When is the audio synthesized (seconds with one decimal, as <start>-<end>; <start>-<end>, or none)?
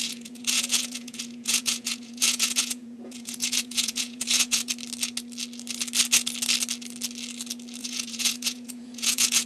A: 0.0-4.7; 7.8-9.5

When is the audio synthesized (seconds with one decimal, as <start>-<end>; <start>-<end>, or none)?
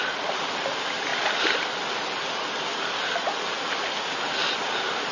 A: none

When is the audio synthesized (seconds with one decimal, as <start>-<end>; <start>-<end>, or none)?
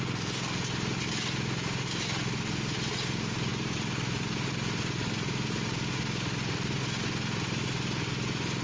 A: none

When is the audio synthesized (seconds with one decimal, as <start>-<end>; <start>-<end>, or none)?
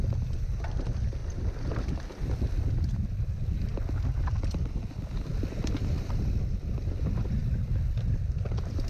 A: none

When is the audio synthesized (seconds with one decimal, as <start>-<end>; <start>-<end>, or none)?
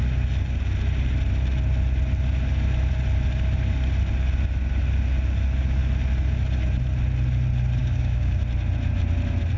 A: 7.8-8.4